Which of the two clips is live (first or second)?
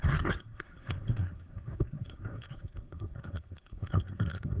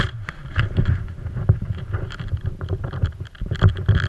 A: second